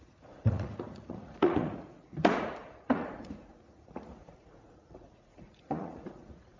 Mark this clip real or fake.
fake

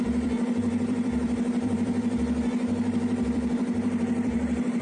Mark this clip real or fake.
fake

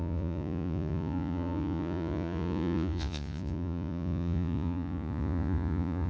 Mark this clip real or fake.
fake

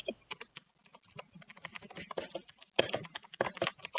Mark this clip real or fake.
real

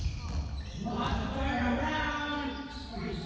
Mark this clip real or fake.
real